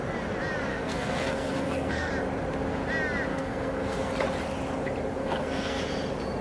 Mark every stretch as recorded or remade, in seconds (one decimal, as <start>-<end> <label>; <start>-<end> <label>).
0.0-0.7 recorded; 0.7-2.1 remade; 2.1-3.3 recorded; 3.3-4.1 remade; 4.1-5.2 recorded; 5.2-5.8 remade; 5.8-6.4 recorded